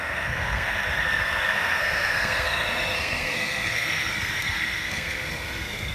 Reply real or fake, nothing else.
fake